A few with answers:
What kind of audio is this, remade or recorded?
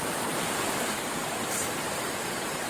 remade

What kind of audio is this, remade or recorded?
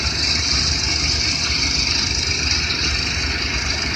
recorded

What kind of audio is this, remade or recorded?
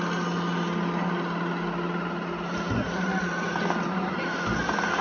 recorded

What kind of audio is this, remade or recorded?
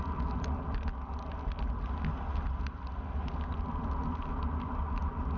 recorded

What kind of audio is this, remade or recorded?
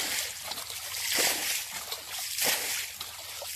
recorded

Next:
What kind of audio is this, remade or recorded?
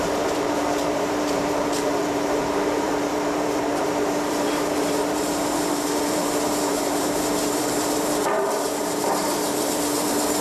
remade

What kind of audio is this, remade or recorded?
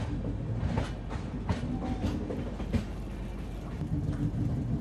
recorded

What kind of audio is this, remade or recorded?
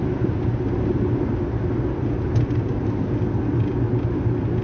recorded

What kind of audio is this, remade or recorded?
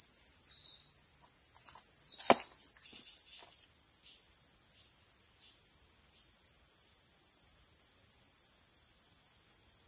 recorded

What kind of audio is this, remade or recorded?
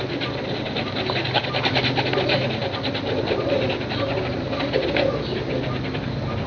recorded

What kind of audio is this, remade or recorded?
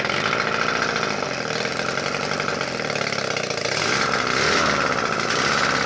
recorded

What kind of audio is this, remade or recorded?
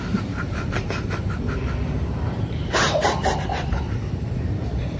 remade